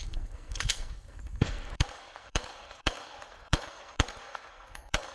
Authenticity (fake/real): fake